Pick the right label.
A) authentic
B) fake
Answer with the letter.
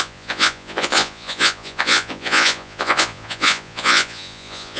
B